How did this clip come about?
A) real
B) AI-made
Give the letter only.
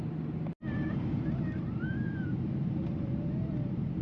B